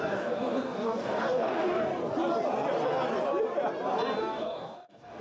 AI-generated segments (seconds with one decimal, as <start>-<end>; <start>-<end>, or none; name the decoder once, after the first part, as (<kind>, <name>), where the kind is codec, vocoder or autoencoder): 0.0-1.9 (codec, DAC); 4.2-5.2